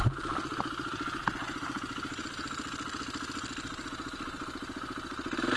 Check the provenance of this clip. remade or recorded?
recorded